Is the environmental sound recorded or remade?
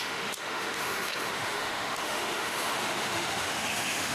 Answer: remade